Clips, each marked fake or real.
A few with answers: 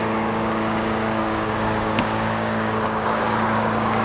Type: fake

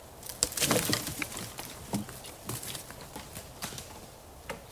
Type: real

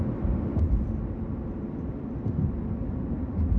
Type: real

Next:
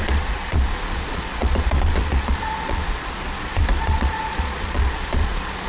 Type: fake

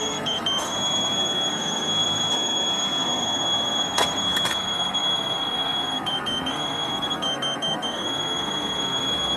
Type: fake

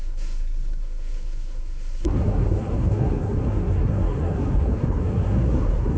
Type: fake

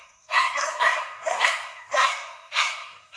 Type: fake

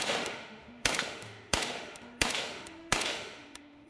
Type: fake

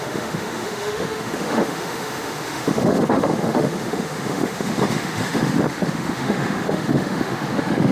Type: fake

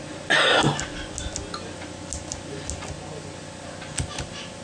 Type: real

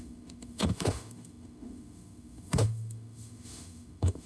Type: fake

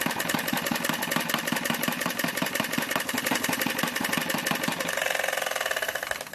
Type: fake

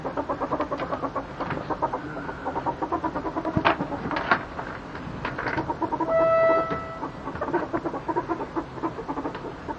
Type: real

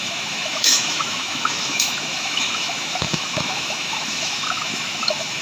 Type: fake